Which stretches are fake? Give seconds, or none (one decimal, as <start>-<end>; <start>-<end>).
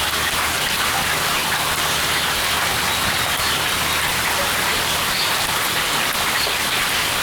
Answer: 1.4-2.1